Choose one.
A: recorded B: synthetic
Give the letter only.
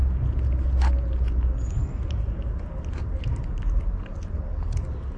A